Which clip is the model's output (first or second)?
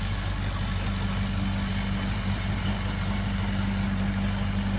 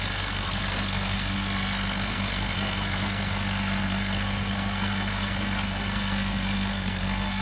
second